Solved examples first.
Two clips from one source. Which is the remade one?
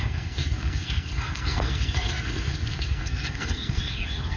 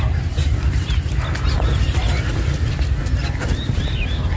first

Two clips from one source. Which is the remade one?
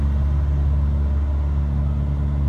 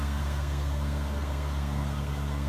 second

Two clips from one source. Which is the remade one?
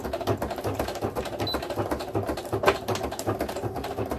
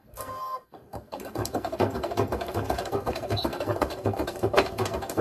second